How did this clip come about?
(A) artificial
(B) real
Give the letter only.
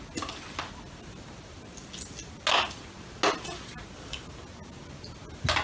B